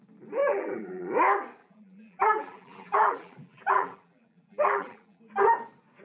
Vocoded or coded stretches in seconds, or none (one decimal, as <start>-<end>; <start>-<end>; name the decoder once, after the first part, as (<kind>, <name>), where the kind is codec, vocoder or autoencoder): 0.4-1.0 (vocoder, BigVGAN v2); 1.6-5.2